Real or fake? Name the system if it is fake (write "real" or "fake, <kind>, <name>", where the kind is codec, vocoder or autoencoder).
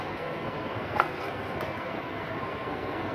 fake, codec, SNAC